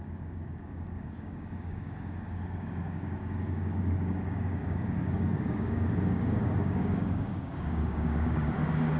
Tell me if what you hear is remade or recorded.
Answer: remade